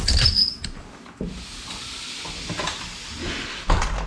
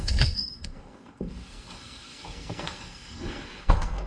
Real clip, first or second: first